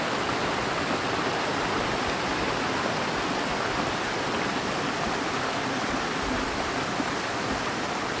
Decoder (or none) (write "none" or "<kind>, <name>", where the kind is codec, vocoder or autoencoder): none